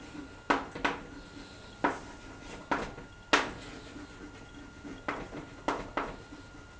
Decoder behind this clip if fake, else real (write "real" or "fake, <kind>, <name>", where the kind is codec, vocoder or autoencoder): real